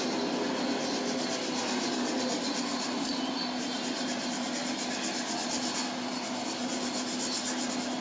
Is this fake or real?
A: real